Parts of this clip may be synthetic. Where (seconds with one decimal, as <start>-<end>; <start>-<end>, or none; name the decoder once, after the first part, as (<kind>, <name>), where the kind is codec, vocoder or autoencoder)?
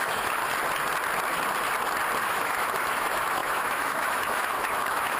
0.0-0.4 (autoencoder, DAC-VAE); 2.2-5.2